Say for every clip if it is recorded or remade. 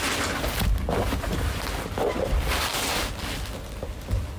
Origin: recorded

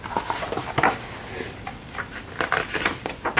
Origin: recorded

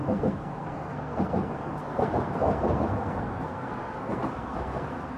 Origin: remade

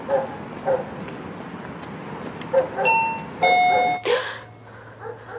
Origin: recorded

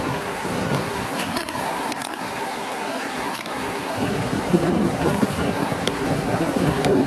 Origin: remade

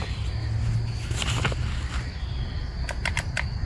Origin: recorded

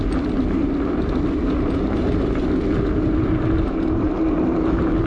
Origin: recorded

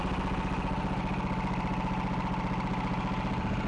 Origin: recorded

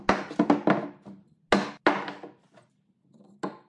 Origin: recorded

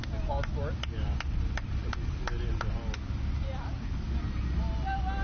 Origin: recorded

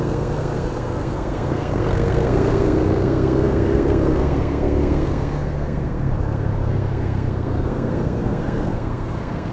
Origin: remade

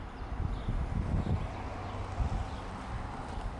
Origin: recorded